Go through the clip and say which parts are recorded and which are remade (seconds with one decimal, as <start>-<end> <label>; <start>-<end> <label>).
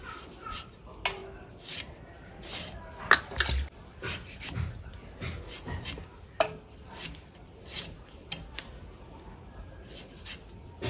0.0-10.9 recorded